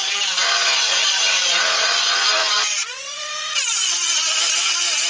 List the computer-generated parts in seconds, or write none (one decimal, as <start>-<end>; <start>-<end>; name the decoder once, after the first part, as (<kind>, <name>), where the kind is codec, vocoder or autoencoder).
0.0-5.1 (vocoder, Vocos)